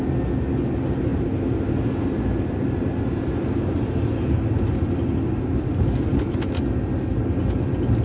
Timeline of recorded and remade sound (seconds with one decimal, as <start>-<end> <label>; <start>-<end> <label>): 0.0-8.0 recorded

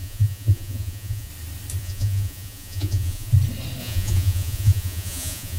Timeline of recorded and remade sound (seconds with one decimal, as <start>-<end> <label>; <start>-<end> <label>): 0.0-1.3 remade; 1.3-1.8 recorded; 1.8-3.3 remade; 3.3-3.8 recorded; 3.8-5.6 remade

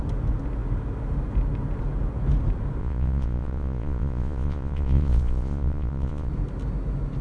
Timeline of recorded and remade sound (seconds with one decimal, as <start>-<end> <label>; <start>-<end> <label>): 0.0-2.8 recorded; 2.8-6.3 remade; 6.3-7.2 recorded

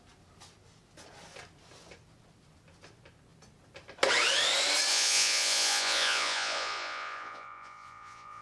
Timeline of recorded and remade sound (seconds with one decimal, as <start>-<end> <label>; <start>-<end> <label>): 0.0-4.9 recorded; 4.9-8.4 remade

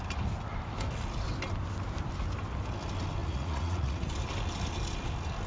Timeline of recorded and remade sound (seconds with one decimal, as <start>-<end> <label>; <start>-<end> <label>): 0.0-3.2 recorded; 3.2-4.1 remade; 4.1-5.5 recorded